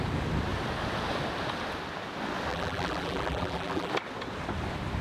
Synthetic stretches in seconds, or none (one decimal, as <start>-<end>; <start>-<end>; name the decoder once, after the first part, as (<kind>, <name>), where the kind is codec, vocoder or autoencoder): 2.5-3.9 (vocoder, BigVGAN v2)